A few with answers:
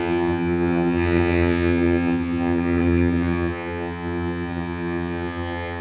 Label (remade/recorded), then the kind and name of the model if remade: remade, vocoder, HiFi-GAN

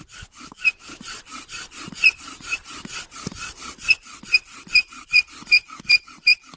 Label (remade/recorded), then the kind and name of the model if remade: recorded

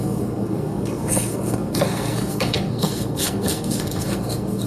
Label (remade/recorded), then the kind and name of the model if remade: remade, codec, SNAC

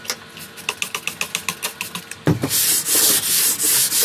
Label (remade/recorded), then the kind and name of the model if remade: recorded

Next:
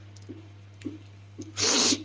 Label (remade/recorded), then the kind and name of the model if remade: recorded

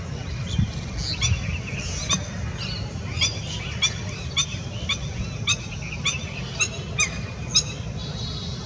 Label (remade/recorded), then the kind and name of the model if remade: recorded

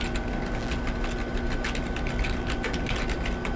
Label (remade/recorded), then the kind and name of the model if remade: recorded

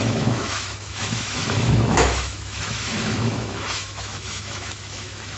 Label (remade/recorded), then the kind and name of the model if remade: remade, autoencoder, DAC-VAE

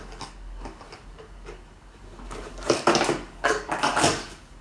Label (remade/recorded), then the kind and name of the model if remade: remade, codec, DAC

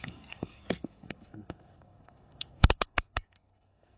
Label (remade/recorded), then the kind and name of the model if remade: remade, codec, SNAC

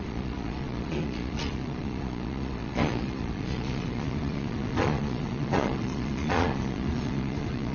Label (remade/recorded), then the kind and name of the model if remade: remade, vocoder, Vocos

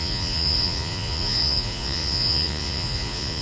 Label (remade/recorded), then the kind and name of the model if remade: remade, vocoder, Vocos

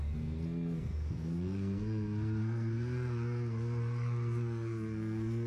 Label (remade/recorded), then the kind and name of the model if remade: remade, codec, SNAC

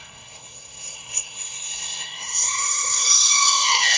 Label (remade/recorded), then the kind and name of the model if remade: remade, codec, SNAC